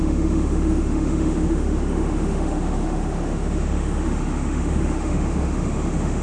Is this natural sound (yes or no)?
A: no